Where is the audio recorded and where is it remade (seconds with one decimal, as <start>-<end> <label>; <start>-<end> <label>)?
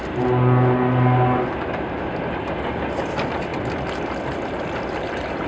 0.0-5.5 recorded